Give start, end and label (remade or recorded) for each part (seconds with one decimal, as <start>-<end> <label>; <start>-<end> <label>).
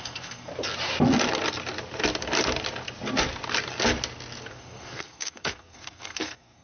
0.0-0.5 remade; 0.5-4.5 recorded; 4.5-6.6 remade